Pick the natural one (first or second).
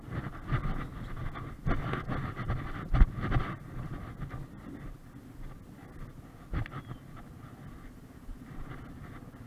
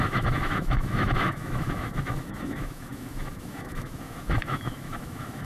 first